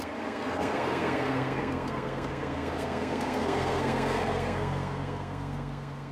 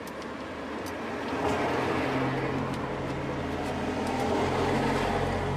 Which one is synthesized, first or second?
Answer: first